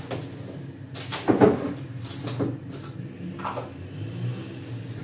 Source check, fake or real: real